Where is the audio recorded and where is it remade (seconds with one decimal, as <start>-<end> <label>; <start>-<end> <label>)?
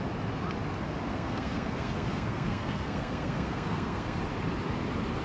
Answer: 0.0-1.1 recorded; 1.1-4.2 remade; 4.2-5.2 recorded